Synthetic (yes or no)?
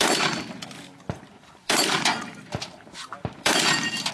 yes